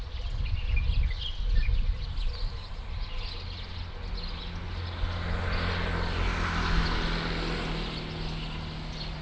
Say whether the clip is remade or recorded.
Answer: recorded